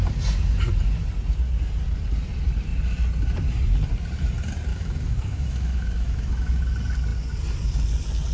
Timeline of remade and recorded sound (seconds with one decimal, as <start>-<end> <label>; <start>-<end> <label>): 0.0-4.7 recorded; 4.7-6.6 remade; 6.6-8.3 recorded